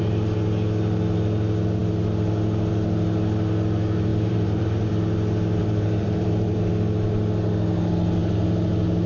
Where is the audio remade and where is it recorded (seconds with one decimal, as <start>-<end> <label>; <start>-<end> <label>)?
0.0-4.1 recorded; 4.1-4.9 remade; 4.9-5.6 recorded; 5.6-6.7 remade; 6.7-9.1 recorded